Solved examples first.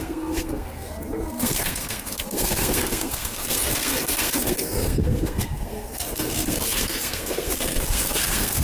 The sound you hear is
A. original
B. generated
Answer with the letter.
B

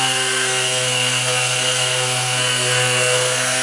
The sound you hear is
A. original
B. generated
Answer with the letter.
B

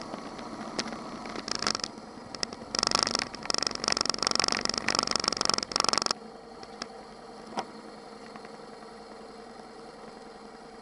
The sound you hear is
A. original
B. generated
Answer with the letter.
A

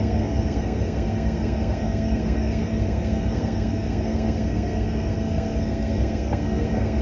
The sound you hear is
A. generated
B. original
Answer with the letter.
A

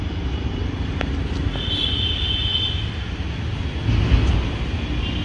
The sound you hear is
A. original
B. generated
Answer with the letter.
A